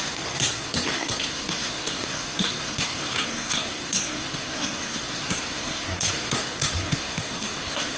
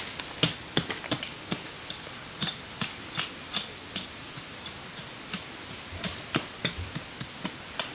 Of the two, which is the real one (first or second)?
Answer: second